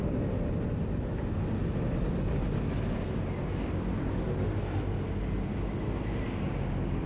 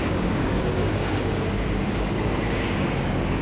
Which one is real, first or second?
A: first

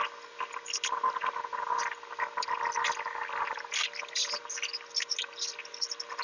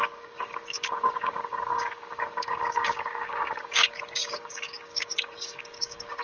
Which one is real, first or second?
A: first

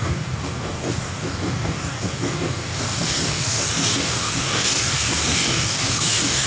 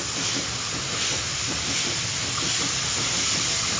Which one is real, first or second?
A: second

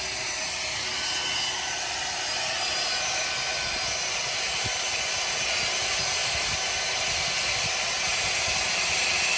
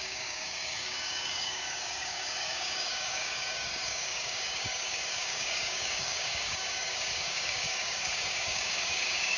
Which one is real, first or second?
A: first